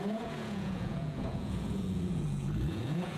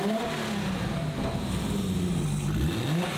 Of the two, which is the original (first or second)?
second